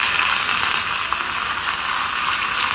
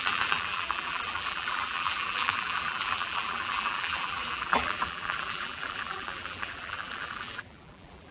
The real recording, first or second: first